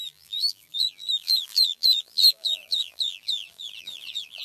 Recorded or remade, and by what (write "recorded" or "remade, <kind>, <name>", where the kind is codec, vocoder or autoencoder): remade, vocoder, BigVGAN v2